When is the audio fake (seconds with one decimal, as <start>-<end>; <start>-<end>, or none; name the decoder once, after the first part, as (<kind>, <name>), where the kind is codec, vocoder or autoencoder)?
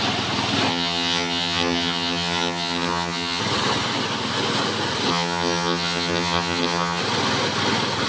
0.7-3.4 (vocoder, HiFi-GAN); 5.1-7.0